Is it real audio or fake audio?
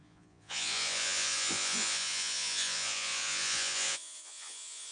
fake